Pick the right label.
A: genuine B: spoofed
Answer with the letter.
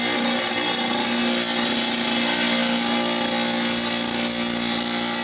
A